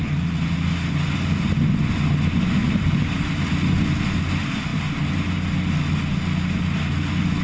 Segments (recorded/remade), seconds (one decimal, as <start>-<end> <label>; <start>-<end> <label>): 0.0-2.6 recorded; 2.6-3.5 remade; 3.5-7.4 recorded